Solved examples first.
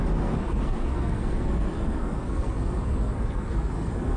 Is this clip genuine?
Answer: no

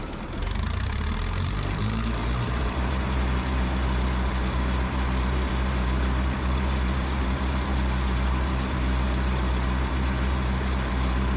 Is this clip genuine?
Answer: no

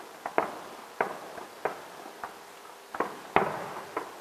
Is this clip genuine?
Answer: yes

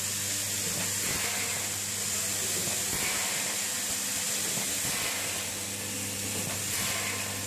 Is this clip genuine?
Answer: yes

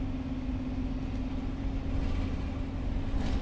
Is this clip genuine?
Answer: yes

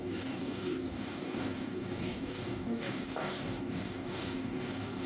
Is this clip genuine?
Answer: no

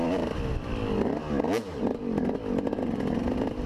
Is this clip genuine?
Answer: yes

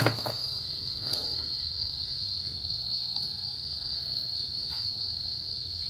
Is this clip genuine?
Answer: no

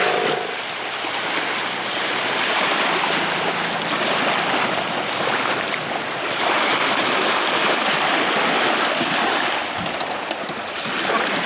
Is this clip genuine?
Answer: yes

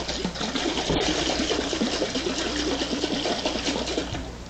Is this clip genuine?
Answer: yes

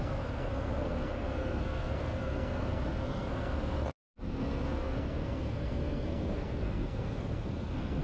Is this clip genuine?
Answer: no